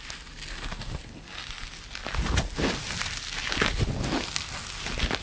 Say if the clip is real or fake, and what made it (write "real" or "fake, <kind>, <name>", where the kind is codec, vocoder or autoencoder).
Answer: real